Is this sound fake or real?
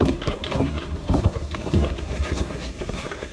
fake